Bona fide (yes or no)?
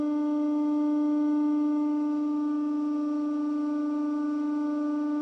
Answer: yes